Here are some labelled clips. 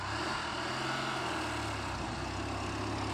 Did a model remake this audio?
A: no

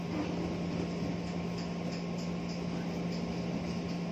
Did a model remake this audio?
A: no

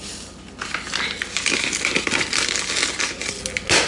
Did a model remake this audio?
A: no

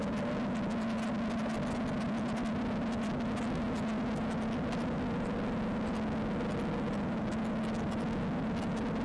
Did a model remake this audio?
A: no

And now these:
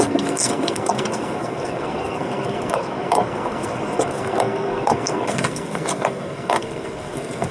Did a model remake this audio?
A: yes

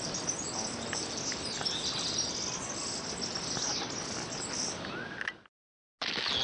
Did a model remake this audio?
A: no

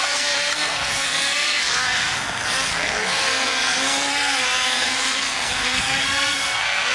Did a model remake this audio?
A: yes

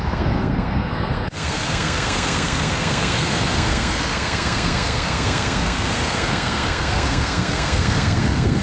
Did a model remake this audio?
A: yes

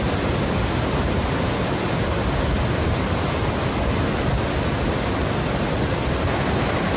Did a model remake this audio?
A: no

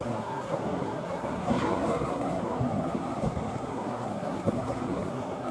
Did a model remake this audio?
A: yes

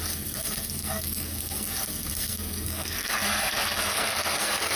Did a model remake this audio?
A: yes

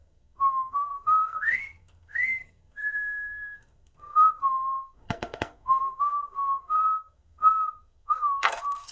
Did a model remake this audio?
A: yes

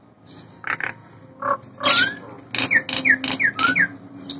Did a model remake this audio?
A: no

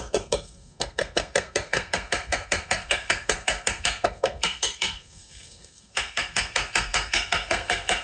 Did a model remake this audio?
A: yes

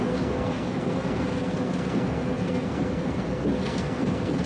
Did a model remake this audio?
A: yes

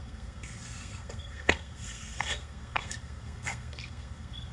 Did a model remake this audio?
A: yes